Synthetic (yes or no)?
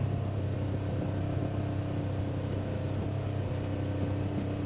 no